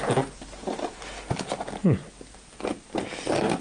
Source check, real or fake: real